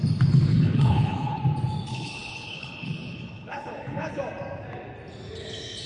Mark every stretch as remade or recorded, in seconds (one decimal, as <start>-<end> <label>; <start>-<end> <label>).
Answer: 0.0-0.5 recorded; 0.5-1.4 remade; 1.4-1.9 recorded; 1.9-4.2 remade; 4.2-5.9 recorded